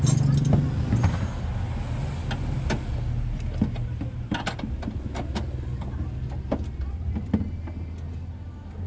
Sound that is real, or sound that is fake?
real